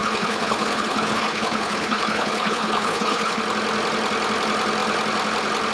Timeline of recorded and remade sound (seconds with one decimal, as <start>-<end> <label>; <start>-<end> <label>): 0.0-3.4 remade; 3.4-5.7 recorded